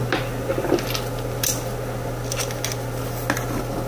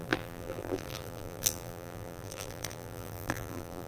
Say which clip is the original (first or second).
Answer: first